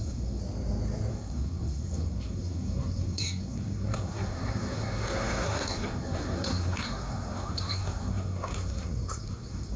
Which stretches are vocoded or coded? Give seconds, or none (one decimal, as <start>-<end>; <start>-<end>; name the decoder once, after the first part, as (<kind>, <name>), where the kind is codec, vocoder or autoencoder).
0.0-0.4 (codec, SNAC); 1.1-9.8